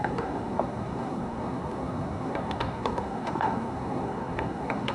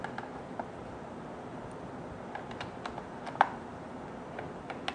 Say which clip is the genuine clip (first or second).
second